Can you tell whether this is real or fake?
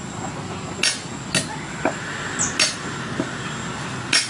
real